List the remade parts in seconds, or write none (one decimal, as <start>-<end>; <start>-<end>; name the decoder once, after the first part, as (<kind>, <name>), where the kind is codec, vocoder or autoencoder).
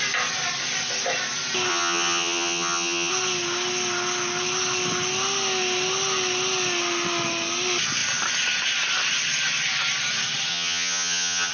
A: 1.7-3.1 (vocoder, HiFi-GAN); 10.5-11.5